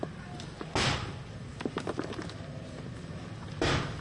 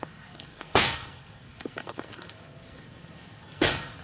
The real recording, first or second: first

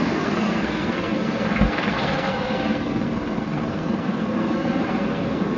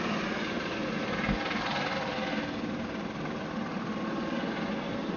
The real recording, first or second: second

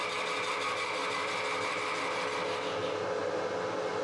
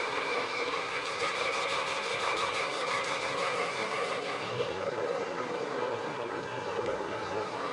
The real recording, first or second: first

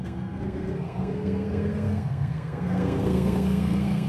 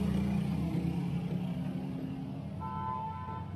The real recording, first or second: second